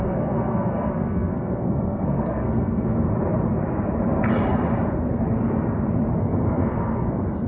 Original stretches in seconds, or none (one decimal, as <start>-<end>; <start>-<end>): 3.1-6.2